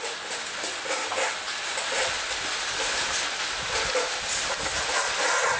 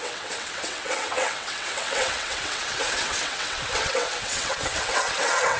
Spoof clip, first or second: second